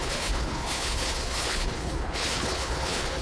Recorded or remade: remade